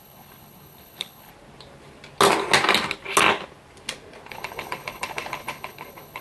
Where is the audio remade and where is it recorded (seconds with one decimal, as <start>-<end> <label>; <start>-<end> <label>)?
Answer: 0.0-1.3 remade; 1.3-4.3 recorded; 4.3-6.2 remade